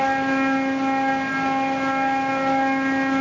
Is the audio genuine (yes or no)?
yes